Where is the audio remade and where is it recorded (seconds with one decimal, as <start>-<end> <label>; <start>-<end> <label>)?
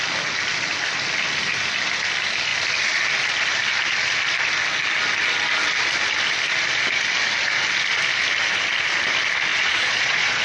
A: 0.0-9.5 recorded; 9.5-10.4 remade